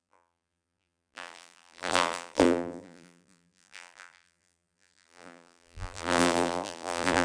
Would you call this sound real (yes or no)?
no